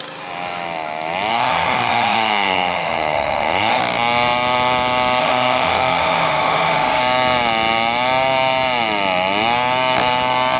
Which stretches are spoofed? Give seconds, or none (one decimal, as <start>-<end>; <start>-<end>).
1.3-3.8; 5.2-7.0